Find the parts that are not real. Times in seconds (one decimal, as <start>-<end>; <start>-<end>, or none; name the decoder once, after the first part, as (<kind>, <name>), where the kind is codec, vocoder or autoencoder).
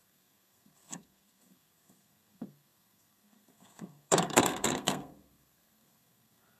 0.0-6.6 (codec, SNAC)